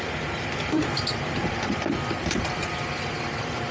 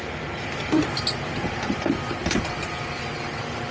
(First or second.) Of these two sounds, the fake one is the first